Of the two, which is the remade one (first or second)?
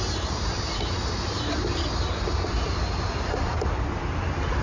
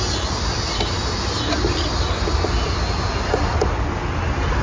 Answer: first